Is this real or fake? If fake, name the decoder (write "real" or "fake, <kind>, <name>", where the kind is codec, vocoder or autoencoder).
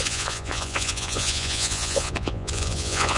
fake, vocoder, Vocos